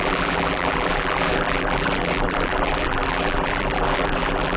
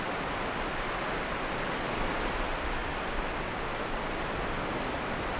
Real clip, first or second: second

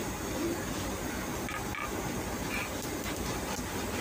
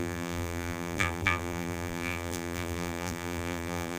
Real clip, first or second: first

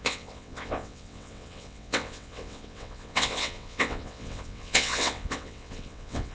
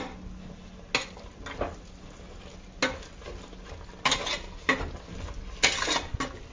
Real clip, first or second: second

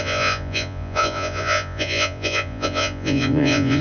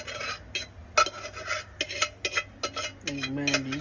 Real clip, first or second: second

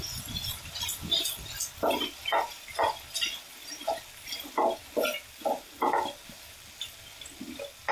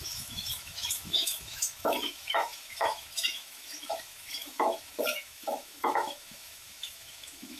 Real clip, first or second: first